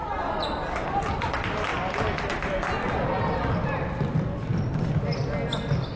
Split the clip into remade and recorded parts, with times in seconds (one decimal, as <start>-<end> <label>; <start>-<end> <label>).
0.0-6.0 recorded